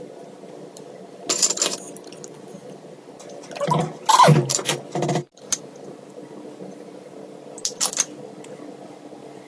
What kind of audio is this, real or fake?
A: real